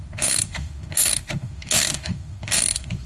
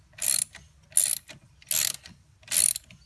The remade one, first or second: first